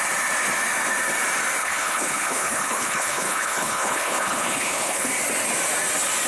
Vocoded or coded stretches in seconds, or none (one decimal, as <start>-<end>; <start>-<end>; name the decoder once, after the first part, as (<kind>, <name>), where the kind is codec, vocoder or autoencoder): 1.6-5.1 (codec, HILCodec)